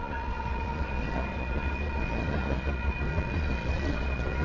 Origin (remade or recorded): remade